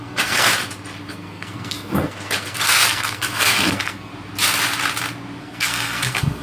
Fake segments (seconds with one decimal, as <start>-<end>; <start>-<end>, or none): 0.0-0.5; 1.1-4.1; 5.4-6.4